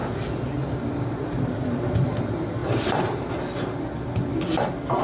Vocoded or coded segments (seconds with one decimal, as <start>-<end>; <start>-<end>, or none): 0.0-2.2; 2.6-3.3